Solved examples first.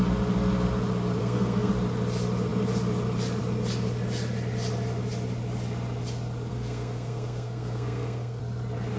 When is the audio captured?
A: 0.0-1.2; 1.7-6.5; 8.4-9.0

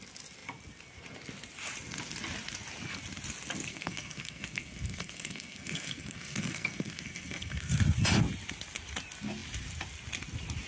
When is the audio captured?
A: 0.0-3.7; 7.7-10.7

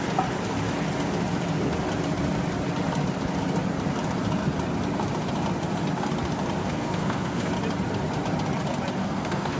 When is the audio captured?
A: 0.0-6.6; 7.5-9.0

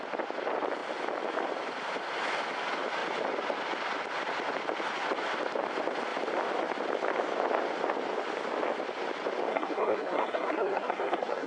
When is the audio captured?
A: 0.0-9.5